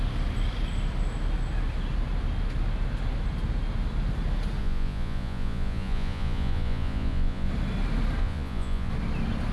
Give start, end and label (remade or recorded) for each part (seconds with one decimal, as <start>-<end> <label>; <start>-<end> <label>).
0.0-4.6 recorded; 4.6-7.5 remade; 7.5-8.2 recorded; 8.2-8.9 remade; 8.9-9.5 recorded